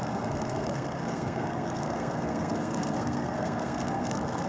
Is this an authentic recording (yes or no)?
no